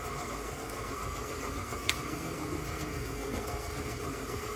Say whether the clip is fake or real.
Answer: fake